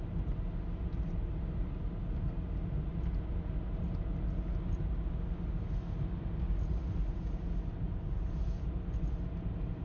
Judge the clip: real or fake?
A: real